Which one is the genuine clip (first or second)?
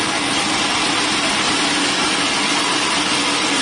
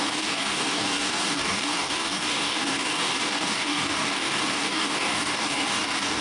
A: first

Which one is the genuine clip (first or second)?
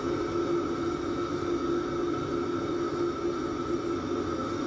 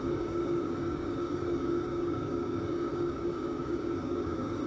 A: first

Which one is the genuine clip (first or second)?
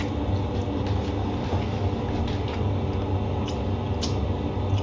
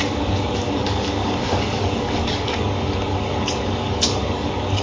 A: first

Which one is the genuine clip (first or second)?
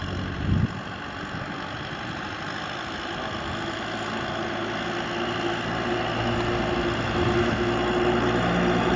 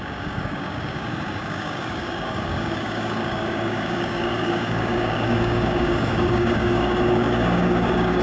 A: first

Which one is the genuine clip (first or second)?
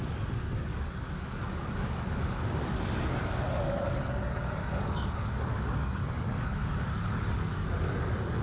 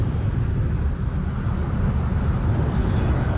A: second